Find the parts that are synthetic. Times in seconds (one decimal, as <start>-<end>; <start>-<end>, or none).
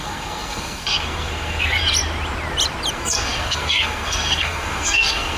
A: 0.0-1.8; 2.9-5.4